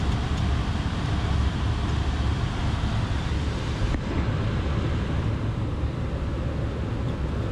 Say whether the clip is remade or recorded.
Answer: recorded